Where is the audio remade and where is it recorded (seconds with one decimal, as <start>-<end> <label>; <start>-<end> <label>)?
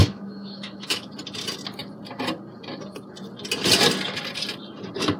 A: 0.0-1.1 remade; 1.1-5.2 recorded